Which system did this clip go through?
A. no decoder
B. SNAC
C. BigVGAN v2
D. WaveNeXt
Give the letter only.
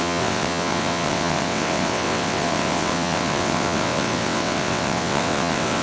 D